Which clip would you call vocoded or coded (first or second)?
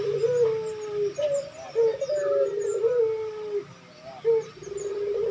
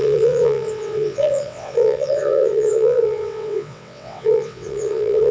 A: second